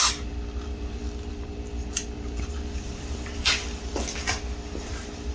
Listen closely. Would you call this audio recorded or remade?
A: remade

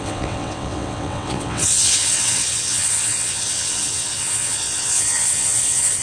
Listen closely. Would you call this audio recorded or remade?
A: remade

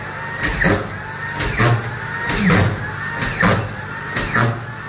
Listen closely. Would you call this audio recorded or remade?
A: recorded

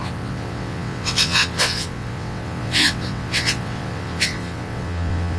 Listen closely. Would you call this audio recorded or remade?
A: remade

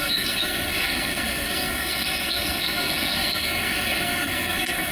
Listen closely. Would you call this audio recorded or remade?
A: remade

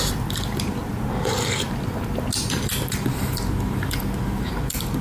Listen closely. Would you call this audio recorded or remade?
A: remade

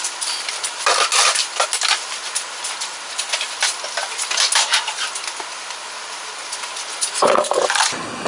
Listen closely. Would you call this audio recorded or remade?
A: recorded